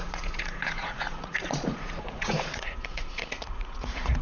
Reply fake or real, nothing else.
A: fake